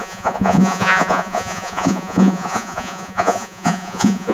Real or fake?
fake